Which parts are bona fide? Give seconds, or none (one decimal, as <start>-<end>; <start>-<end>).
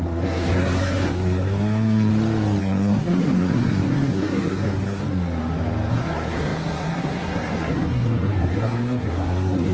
2.1-2.6; 5.0-5.9